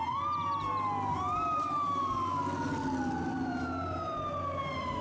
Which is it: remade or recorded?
recorded